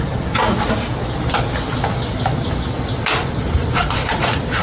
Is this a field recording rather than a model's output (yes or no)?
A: yes